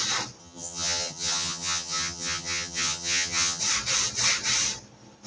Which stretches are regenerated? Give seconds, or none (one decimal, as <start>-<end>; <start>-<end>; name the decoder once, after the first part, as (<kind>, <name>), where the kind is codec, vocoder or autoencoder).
0.4-3.6 (vocoder, HiFi-GAN)